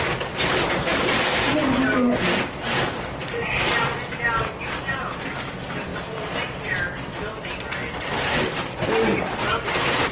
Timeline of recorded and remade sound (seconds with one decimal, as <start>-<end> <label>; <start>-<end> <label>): 0.0-10.1 recorded